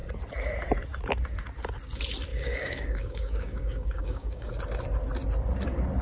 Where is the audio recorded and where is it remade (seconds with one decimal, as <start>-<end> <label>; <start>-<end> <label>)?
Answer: 0.0-2.3 recorded; 2.3-4.5 remade; 4.5-6.0 recorded